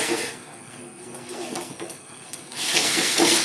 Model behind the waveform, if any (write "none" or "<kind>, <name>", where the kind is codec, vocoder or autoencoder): codec, SNAC